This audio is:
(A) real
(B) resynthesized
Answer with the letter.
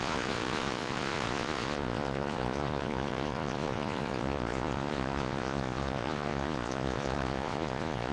B